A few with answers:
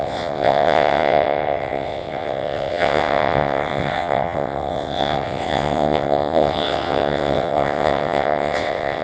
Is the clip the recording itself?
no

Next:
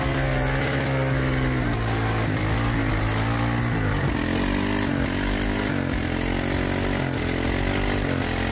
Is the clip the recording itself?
yes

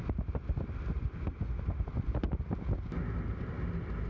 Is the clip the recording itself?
yes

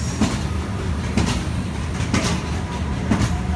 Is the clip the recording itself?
yes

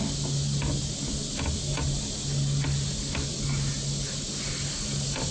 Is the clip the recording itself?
yes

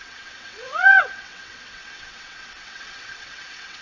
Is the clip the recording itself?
no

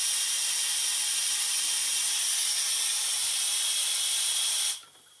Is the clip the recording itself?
yes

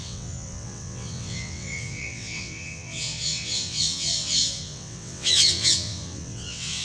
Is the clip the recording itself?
no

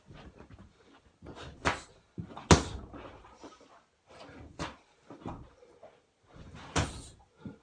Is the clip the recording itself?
yes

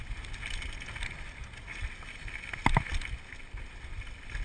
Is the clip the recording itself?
yes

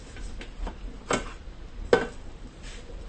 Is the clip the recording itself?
yes